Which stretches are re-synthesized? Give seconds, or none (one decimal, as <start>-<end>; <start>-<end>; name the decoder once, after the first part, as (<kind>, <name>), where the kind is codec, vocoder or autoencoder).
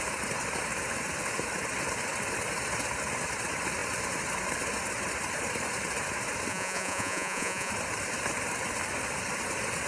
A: 6.5-7.7 (vocoder, Vocos)